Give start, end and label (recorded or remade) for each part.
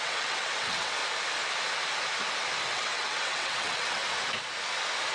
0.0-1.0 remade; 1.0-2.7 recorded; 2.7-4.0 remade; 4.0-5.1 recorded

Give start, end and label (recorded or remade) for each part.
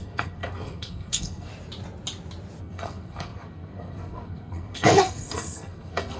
0.0-1.5 remade; 1.5-2.6 recorded; 2.6-6.2 remade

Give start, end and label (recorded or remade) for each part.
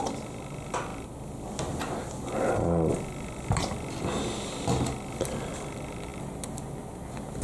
0.0-7.4 recorded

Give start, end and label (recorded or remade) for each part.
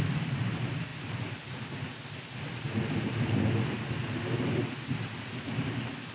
0.0-6.1 recorded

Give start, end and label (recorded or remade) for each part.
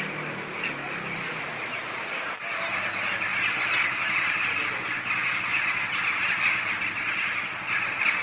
0.0-8.2 recorded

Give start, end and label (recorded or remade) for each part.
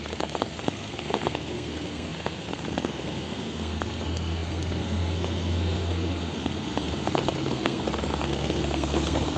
0.0-9.4 remade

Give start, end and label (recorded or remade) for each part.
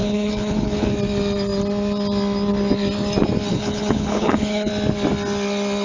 0.0-0.9 remade; 0.9-3.5 recorded; 3.5-4.7 remade; 4.7-5.8 recorded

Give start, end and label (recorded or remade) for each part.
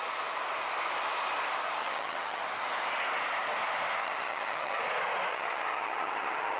0.0-1.8 recorded; 1.8-2.4 remade; 2.4-4.0 recorded; 4.0-4.8 remade; 4.8-5.3 recorded; 5.3-6.6 remade